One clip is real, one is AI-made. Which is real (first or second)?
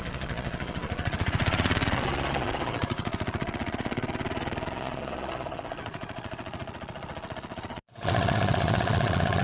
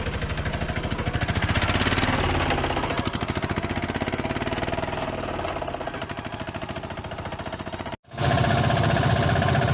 second